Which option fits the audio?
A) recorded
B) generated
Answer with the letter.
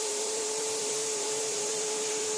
B